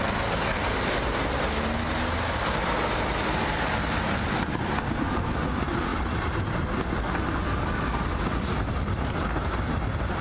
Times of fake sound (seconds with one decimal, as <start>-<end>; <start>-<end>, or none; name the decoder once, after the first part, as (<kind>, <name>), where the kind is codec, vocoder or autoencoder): none